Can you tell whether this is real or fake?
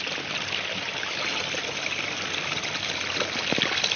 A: real